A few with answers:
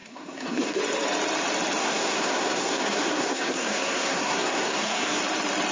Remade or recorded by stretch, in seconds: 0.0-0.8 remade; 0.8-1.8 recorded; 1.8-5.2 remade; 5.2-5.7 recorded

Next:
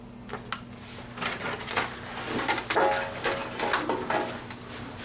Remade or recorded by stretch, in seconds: 0.0-5.0 recorded

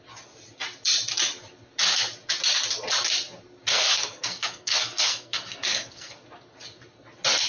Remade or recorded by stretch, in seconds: 0.0-3.7 recorded; 3.7-6.2 remade; 6.2-7.5 recorded

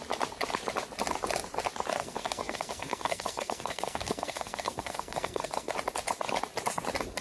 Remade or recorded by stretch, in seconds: 0.0-2.0 recorded; 2.0-5.7 remade; 5.7-7.2 recorded

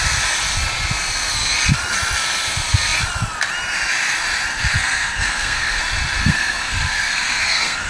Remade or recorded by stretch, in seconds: 0.0-4.5 recorded; 4.5-5.8 remade; 5.8-6.2 recorded; 6.2-7.9 remade

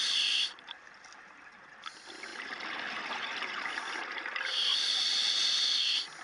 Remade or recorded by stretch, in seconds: 0.0-6.2 recorded

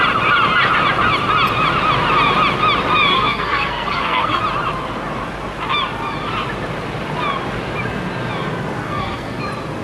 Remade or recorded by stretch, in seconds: 0.0-3.1 recorded; 3.1-4.4 remade; 4.4-8.8 recorded; 8.8-9.4 remade; 9.4-9.8 recorded

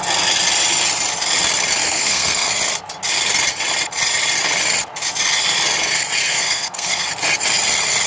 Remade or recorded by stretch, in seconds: 0.0-1.8 recorded; 1.8-2.5 remade; 2.5-6.2 recorded; 6.2-7.1 remade; 7.1-8.1 recorded